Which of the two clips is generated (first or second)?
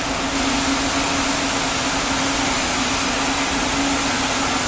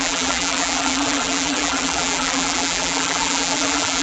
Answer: second